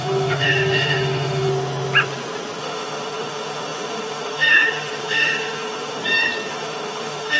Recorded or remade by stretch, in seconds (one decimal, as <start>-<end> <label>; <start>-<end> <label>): 0.0-1.5 remade; 1.5-2.6 recorded; 2.6-6.0 remade; 6.0-6.5 recorded; 6.5-7.4 remade